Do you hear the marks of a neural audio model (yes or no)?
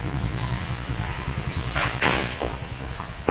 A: yes